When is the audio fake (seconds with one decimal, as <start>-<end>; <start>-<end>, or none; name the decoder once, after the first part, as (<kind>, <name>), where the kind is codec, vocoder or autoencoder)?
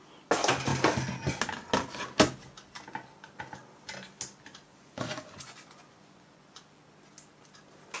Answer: 4.7-6.6 (vocoder, Vocos)